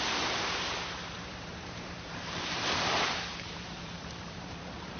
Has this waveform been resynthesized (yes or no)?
yes